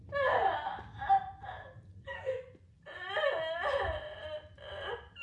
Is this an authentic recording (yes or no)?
yes